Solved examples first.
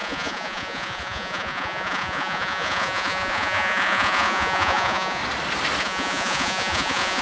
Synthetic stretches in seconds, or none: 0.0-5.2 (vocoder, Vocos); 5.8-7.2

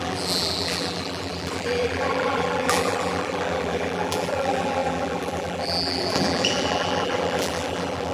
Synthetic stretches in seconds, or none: 0.0-8.1 (vocoder, BigVGAN v2)

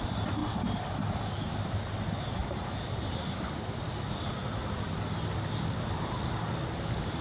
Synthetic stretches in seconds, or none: 2.4-3.2 (vocoder, BigVGAN v2)

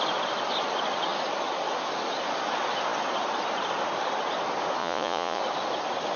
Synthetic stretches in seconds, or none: 4.8-5.4 (vocoder, Vocos)

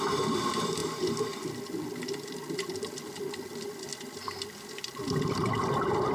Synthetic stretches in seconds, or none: 0.0-0.8 (vocoder, BigVGAN v2); 3.1-3.9; 4.7-6.1